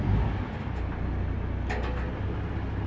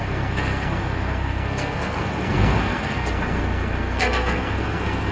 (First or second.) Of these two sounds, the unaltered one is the first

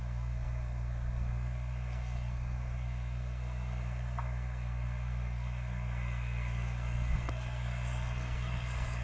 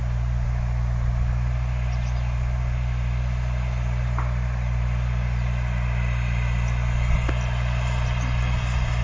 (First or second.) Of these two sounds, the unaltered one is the second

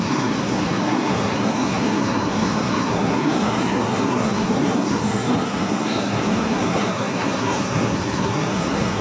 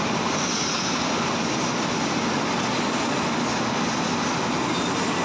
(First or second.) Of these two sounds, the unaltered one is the second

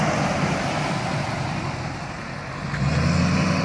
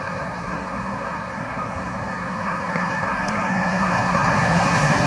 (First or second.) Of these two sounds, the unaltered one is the first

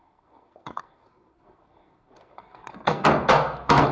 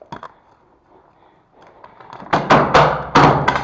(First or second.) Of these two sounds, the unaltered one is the second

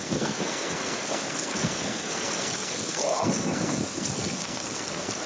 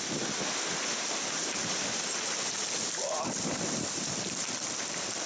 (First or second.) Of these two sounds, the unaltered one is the second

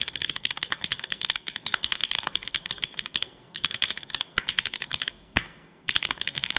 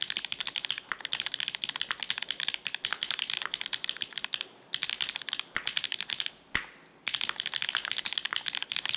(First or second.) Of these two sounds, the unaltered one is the second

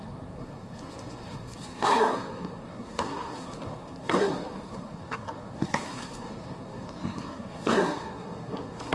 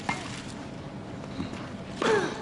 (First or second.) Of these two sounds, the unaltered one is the second